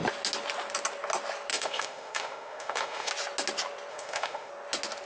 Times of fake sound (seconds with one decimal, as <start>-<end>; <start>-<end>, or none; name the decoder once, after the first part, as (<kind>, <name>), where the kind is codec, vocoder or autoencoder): 1.5-3.1 (autoencoder, DAC-VAE); 3.9-4.5